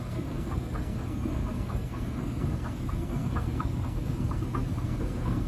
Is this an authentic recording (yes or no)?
no